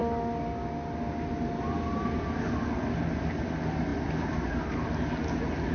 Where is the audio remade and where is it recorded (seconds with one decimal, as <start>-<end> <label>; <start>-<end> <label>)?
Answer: 0.0-5.7 recorded